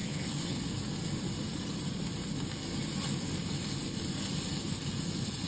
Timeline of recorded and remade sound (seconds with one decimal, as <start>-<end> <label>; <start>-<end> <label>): 0.0-0.6 remade; 0.6-5.5 recorded